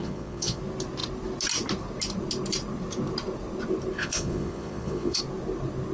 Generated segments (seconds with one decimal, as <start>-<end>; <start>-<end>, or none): 0.0-0.6; 4.0-5.2